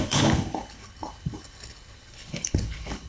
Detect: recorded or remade remade